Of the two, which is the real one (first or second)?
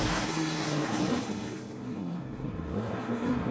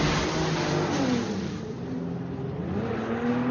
second